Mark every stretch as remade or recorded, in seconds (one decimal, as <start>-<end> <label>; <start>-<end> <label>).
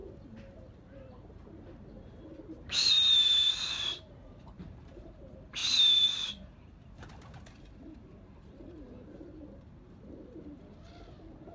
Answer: 0.0-5.6 remade; 5.6-6.3 recorded; 6.3-11.5 remade